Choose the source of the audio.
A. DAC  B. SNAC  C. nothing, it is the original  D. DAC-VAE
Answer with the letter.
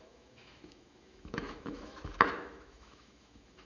D